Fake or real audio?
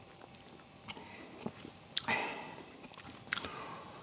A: real